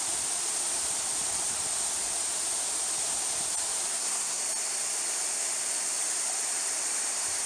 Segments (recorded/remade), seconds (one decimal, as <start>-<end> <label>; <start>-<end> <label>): 0.0-3.9 recorded; 3.9-4.4 remade; 4.4-7.5 recorded